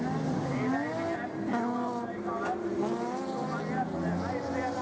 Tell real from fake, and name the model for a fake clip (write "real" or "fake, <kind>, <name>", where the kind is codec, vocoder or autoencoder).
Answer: real